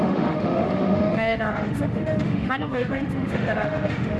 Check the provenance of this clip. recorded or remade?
remade